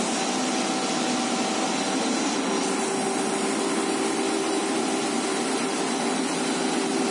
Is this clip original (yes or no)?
yes